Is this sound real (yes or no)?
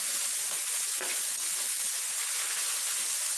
no